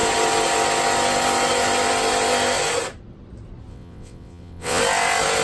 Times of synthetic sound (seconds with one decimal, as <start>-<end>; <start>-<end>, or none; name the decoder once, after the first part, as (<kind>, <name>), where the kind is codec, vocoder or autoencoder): 3.7-4.8 (vocoder, WaveNeXt)